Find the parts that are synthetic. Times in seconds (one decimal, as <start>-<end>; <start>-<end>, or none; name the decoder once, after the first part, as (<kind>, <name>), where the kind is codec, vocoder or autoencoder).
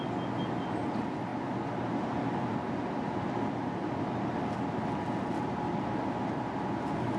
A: none